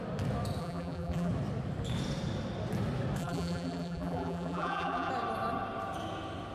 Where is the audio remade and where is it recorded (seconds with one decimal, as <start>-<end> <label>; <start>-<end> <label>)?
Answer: 0.0-0.6 recorded; 0.6-1.3 remade; 1.3-3.2 recorded; 3.2-5.1 remade; 5.1-6.5 recorded